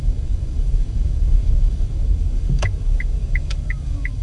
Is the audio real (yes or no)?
no